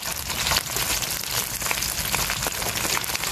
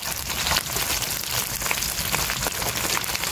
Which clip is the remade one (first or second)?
second